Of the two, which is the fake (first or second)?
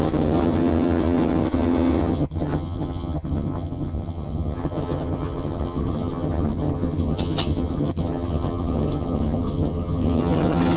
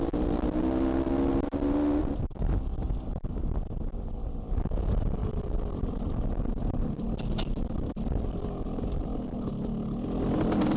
first